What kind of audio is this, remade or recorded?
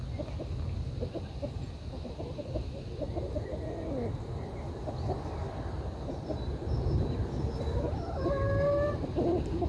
recorded